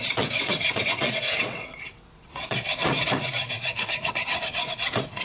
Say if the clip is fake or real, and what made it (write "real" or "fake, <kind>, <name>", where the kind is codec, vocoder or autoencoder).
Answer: fake, vocoder, WaveNeXt